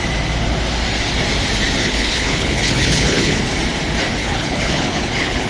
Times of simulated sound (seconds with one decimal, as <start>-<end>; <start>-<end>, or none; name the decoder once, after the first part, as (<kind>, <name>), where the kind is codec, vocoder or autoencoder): 1.8-3.4 (codec, HILCodec); 4.2-5.5